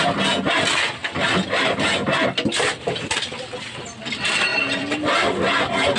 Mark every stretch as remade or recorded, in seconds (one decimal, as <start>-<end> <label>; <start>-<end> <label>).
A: 0.0-6.0 recorded